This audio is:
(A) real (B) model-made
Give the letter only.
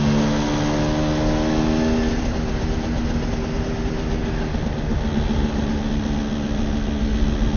A